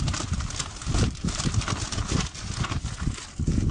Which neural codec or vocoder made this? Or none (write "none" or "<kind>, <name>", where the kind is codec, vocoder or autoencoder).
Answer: none